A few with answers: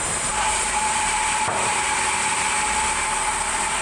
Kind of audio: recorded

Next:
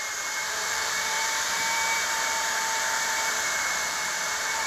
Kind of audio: remade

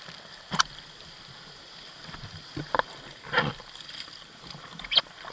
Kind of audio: recorded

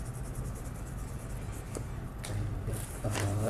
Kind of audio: recorded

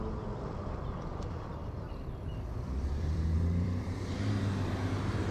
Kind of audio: remade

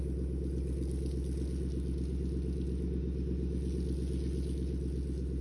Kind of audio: recorded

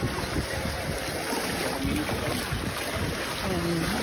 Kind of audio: recorded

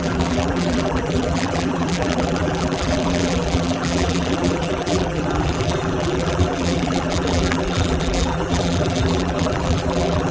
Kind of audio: remade